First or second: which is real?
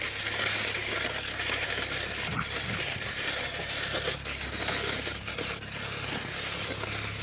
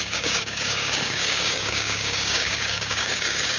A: first